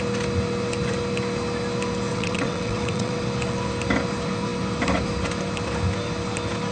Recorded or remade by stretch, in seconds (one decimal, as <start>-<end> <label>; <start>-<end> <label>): 0.0-2.1 recorded; 2.1-3.2 remade; 3.2-6.7 recorded

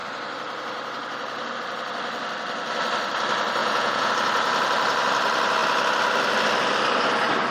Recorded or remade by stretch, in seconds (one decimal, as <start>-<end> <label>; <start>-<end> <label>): 0.0-3.6 recorded; 3.6-4.1 remade; 4.1-7.5 recorded

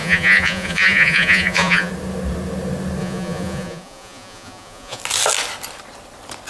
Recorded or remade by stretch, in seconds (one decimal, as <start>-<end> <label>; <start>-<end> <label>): 0.0-1.9 remade; 1.9-3.0 recorded; 3.0-5.0 remade; 5.0-6.5 recorded